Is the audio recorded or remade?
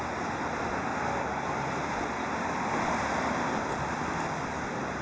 remade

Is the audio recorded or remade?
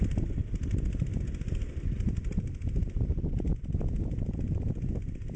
remade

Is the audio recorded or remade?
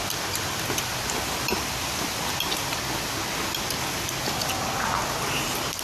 recorded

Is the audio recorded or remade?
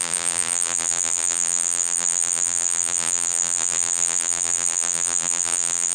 remade